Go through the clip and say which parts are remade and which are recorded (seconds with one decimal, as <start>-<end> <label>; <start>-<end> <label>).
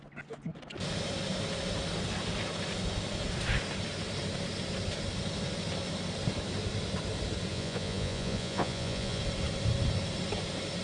0.0-7.5 recorded; 7.5-9.2 remade; 9.2-10.8 recorded